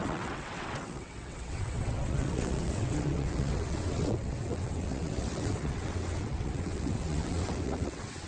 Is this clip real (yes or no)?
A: no